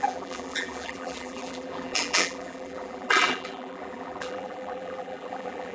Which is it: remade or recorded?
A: remade